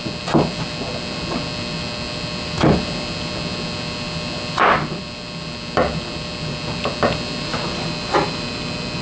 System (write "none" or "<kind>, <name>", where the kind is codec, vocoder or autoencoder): none